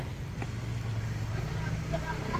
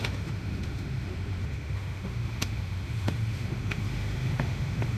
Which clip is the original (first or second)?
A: first